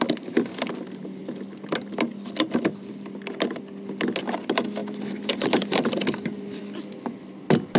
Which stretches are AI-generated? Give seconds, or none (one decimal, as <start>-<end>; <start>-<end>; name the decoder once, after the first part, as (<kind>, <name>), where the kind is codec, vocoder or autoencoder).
4.8-6.6 (vocoder, BigVGAN v2)